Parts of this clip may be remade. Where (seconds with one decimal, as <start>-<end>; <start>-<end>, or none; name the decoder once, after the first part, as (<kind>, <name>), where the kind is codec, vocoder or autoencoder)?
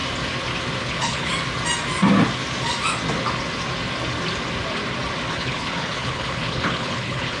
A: 0.8-1.3 (codec, HILCodec); 5.3-7.4